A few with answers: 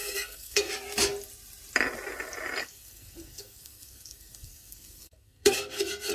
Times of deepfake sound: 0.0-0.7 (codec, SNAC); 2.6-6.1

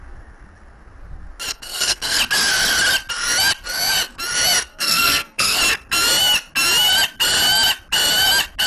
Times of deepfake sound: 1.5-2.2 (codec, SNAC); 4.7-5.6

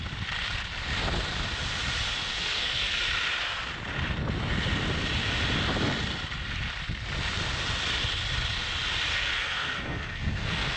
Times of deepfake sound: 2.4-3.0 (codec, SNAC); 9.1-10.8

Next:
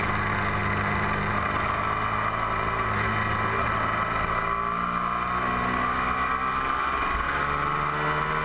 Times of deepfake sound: none